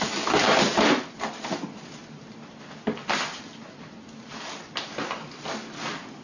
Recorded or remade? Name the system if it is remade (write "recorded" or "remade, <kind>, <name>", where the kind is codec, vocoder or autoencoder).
recorded